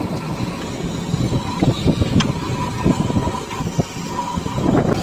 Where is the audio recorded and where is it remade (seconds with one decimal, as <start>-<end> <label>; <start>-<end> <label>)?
0.0-5.0 recorded